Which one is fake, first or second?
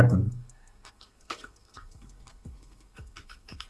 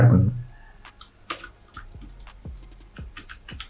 first